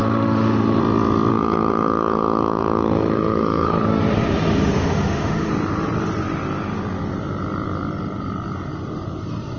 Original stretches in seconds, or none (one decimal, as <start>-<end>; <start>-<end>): 0.8-1.3; 5.5-9.6